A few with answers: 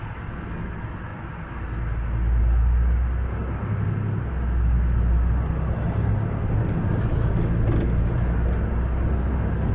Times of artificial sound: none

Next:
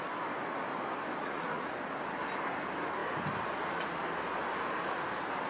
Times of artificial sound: 1.2-1.7 (vocoder, Vocos)

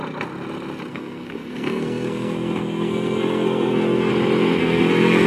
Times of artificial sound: 0.9-4.1 (codec, SNAC); 4.6-5.3

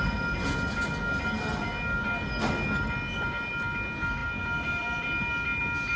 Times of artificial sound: none

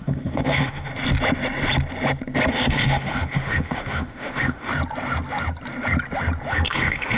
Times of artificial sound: 0.0-0.9 (autoencoder, DAC-VAE); 2.5-4.7; 6.5-7.2

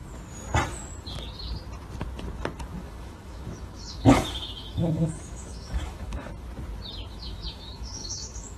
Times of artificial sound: 2.7-6.3 (autoencoder, DAC-VAE); 7.1-8.6

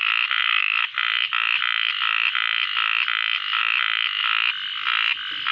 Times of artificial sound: none

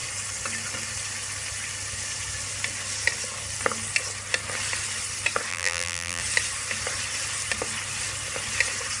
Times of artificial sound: 5.5-6.2 (vocoder, BigVGAN v2)